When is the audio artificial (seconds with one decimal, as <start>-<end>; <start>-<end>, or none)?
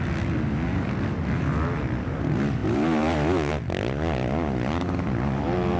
none